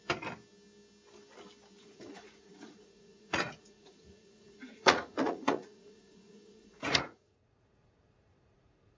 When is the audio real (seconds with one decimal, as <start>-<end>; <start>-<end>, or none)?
0.0-1.8